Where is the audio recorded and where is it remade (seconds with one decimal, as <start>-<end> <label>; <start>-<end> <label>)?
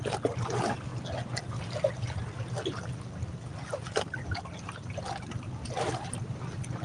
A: 0.0-6.8 recorded